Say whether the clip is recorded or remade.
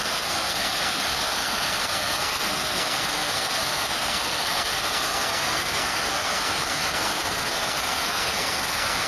remade